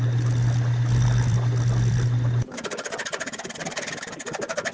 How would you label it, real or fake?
real